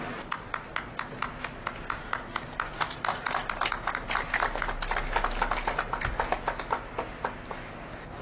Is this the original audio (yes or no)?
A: yes